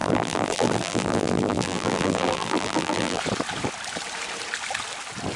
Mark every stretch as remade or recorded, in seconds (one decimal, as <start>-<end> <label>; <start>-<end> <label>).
0.0-3.2 remade; 3.2-5.4 recorded